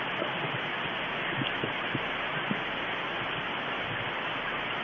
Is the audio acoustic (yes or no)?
yes